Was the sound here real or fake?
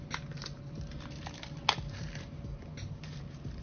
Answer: real